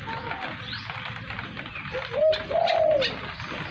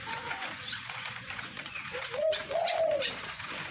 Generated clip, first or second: second